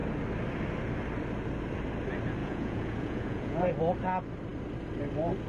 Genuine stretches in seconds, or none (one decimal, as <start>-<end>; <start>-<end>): 0.0-2.4; 3.7-5.5